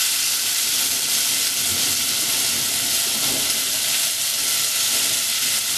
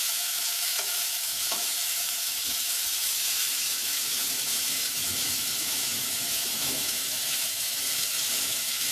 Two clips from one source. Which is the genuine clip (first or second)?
first